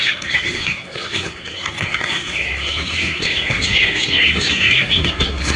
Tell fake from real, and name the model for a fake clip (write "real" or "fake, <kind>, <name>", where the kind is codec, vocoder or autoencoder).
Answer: fake, codec, SNAC